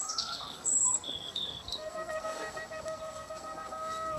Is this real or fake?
fake